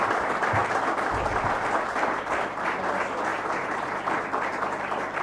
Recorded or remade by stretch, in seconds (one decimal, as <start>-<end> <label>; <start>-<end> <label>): 0.0-0.6 remade; 0.6-1.9 recorded; 1.9-5.2 remade